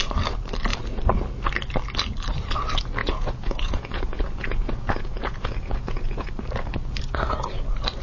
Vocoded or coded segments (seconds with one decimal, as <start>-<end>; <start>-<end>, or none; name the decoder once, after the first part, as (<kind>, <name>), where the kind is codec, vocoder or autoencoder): 3.0-6.3 (vocoder, Vocos)